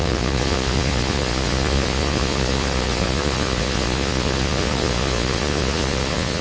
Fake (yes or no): yes